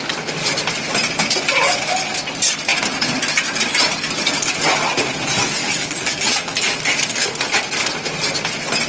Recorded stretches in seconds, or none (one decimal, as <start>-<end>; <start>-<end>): 0.0-5.6; 6.8-8.9